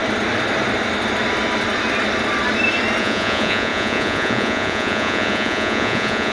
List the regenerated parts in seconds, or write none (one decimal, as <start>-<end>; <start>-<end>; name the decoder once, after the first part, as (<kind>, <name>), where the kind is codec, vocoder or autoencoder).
3.0-6.3 (vocoder, Vocos)